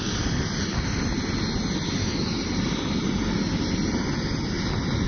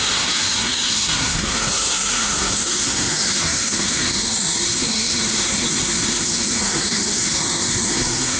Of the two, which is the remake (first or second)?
second